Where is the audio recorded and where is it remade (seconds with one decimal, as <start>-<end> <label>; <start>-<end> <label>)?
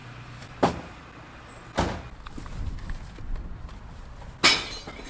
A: 0.0-1.0 remade; 1.0-5.1 recorded